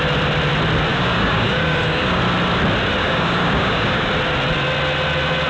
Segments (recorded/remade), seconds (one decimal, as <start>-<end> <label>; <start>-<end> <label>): 0.0-0.9 recorded; 0.9-2.2 remade; 2.2-3.0 recorded; 3.0-4.1 remade; 4.1-5.5 recorded